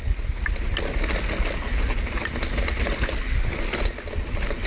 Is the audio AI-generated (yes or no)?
no